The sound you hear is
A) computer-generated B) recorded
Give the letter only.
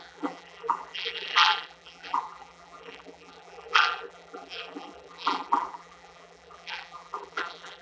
A